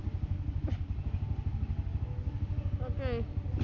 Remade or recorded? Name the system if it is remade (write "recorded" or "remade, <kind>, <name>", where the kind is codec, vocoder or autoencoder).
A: recorded